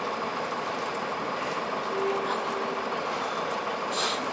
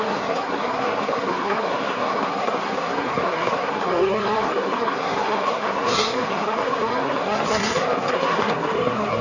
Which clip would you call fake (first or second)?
second